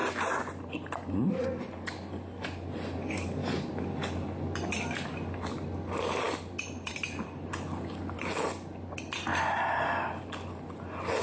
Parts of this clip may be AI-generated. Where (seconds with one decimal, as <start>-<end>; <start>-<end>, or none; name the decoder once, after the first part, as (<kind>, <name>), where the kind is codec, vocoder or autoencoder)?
none